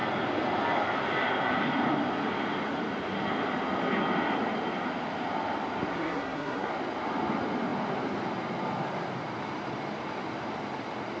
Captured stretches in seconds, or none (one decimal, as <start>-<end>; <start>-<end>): 0.0-5.9; 6.7-11.2

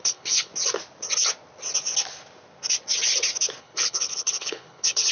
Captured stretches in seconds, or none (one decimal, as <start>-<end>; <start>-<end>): 0.5-3.6

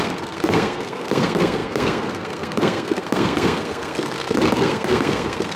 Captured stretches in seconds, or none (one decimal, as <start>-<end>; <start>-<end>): none

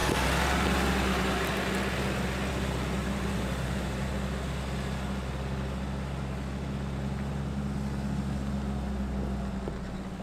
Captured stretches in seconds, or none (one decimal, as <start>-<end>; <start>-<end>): 0.0-3.0; 4.1-10.2